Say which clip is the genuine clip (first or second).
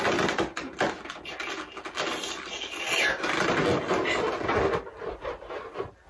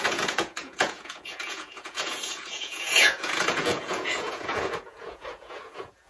first